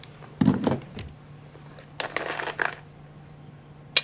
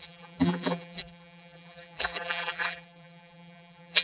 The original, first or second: first